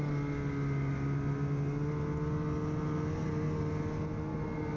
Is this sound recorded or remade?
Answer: recorded